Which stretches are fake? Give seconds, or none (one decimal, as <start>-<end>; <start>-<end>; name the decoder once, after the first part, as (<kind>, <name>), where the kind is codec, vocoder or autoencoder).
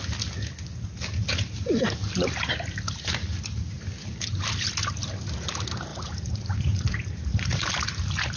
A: 5.9-7.8 (vocoder, BigVGAN v2)